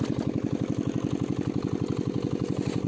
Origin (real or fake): real